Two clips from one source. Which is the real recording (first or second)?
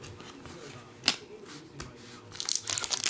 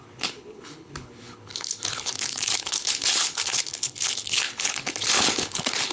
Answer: first